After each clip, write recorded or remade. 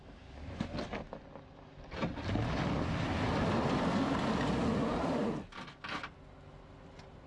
recorded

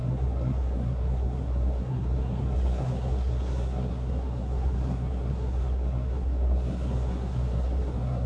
remade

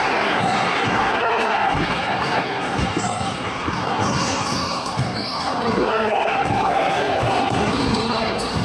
remade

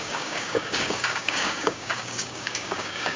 remade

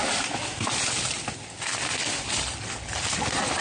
recorded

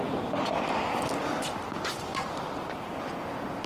remade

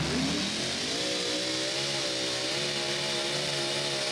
recorded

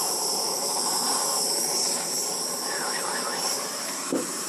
remade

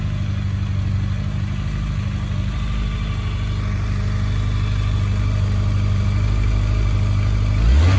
recorded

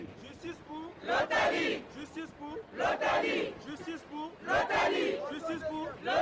recorded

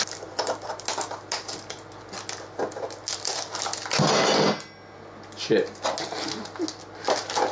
recorded